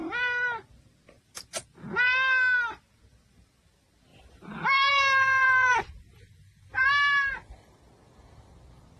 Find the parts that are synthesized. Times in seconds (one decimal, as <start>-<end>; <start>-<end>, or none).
4.1-4.9; 5.4-6.9